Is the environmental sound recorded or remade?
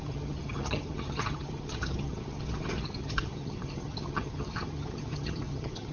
remade